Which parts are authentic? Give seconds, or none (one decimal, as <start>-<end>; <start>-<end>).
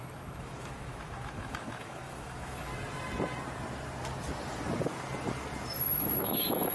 2.7-6.2